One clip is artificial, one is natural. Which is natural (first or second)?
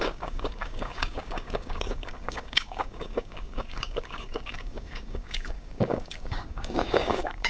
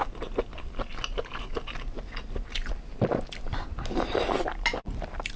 second